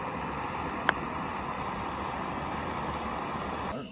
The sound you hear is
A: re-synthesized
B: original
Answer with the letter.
B